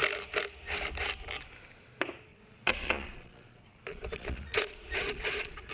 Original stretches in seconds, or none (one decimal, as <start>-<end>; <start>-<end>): 0.0-2.3

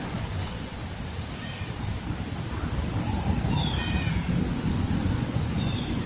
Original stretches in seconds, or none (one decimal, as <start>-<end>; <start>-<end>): 0.8-4.5

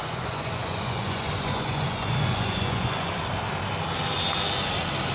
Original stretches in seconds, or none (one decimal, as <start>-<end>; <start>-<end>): 3.1-5.1

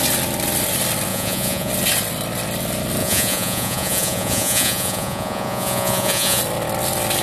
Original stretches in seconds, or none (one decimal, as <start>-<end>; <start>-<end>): 0.0-1.1; 1.7-3.0; 6.4-7.2

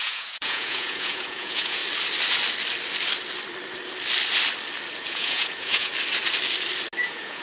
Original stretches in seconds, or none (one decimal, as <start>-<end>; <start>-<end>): 1.8-5.1; 5.9-7.0

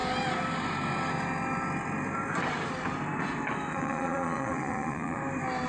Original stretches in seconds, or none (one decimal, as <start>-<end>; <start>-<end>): 0.0-3.7; 5.2-5.7